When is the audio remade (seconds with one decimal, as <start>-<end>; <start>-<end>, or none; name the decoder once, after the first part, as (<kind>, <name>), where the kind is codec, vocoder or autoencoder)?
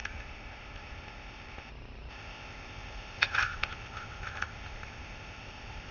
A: 0.0-1.7 (codec, ZipCodec); 2.1-5.9